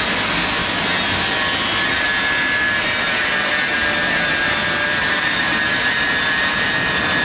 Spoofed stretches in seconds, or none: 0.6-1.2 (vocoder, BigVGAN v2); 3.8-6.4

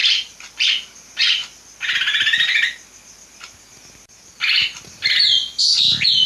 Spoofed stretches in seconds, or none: 0.0-0.7 (vocoder, BigVGAN v2)

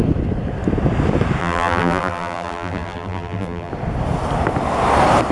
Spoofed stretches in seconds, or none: 1.4-3.7 (vocoder, BigVGAN v2)

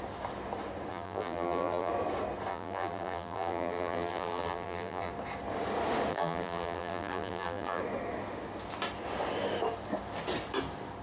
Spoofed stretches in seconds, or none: 0.9-1.9 (vocoder, BigVGAN v2); 2.5-5.1; 6.1-7.8

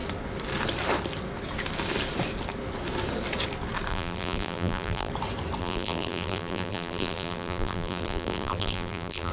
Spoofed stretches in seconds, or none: 3.9-5.1 (vocoder, BigVGAN v2); 5.6-9.3

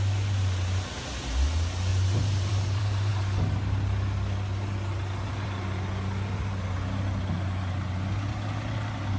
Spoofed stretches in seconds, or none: 1.9-3.1 (vocoder, BigVGAN v2)